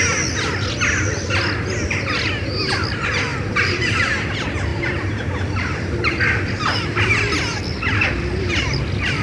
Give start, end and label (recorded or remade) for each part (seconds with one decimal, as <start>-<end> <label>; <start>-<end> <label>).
0.0-3.3 recorded; 3.3-3.8 remade; 3.8-4.7 recorded; 4.7-6.1 remade; 6.1-9.2 recorded